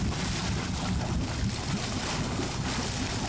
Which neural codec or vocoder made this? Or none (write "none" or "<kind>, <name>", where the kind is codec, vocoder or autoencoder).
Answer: none